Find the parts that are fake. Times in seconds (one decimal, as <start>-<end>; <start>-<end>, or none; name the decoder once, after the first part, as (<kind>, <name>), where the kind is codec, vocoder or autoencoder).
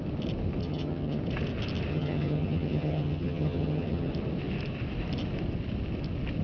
0.6-1.2 (vocoder, HiFi-GAN); 1.9-4.1